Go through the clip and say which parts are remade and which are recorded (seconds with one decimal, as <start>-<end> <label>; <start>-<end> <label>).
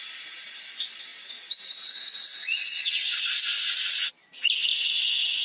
0.0-5.4 recorded